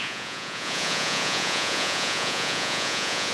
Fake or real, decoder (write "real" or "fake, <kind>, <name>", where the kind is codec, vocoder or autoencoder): fake, vocoder, Vocos